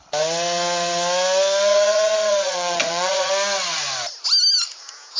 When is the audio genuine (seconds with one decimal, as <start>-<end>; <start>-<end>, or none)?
0.0-1.7; 3.3-5.2